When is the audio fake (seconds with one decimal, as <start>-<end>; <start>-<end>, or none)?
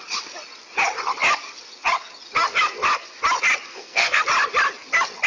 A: 3.7-4.2